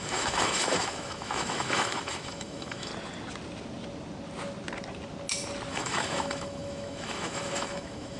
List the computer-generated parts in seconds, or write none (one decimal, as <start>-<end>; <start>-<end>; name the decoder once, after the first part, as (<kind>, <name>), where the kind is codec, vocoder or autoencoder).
0.0-2.9 (autoencoder, DAC-VAE); 5.7-8.2